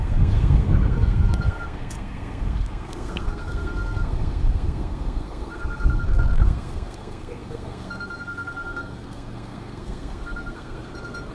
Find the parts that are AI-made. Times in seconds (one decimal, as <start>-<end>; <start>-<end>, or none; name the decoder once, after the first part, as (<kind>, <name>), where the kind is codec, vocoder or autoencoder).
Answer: 0.0-11.3 (codec, SNAC)